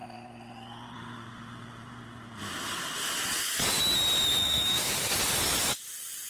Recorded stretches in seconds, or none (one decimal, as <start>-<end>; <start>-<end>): 0.0-4.4; 5.1-6.3